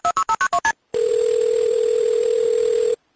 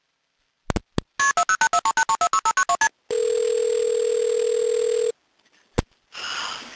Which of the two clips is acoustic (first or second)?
second